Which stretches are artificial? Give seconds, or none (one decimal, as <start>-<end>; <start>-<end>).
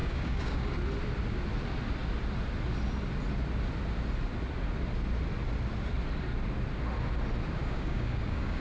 0.0-0.7; 7.6-8.6